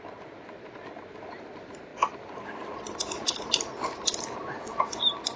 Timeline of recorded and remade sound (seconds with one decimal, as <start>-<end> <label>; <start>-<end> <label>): 0.0-5.4 recorded